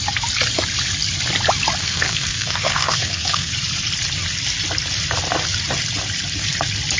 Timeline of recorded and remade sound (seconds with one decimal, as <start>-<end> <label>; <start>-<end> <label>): 0.0-1.8 recorded; 1.8-3.5 remade; 3.5-7.0 recorded

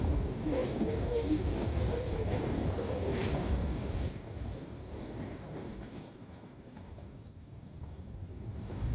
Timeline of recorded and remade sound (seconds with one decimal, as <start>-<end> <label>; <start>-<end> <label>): 0.0-8.9 remade

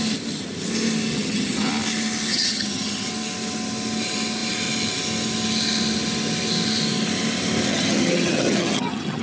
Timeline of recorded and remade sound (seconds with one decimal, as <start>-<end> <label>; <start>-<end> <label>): 0.0-1.1 recorded; 1.1-1.7 remade; 1.7-2.3 recorded; 2.3-3.1 remade; 3.1-7.7 recorded; 7.7-9.2 remade

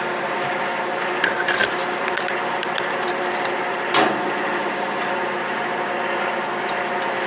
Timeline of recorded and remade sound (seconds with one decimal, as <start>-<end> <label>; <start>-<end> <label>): 0.0-7.3 recorded

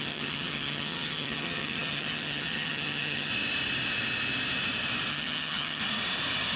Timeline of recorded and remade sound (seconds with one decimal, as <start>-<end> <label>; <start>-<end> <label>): 0.0-3.3 remade; 3.3-5.1 recorded; 5.1-5.8 remade; 5.8-6.6 recorded